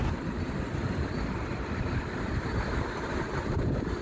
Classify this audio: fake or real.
real